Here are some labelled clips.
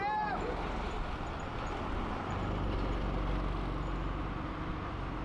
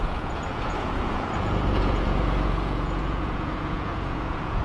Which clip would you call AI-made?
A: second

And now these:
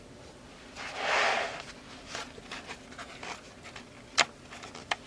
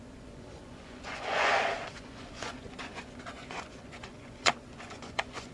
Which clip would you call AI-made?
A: second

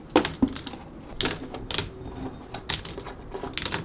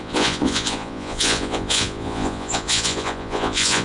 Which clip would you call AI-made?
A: second